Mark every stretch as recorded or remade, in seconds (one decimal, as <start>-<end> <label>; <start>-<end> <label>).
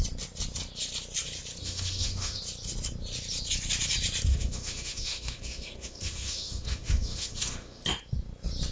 0.0-1.6 recorded; 1.6-2.4 remade; 2.4-4.3 recorded; 4.3-7.9 remade; 7.9-8.7 recorded